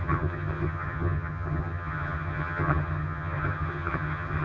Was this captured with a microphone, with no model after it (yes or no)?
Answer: no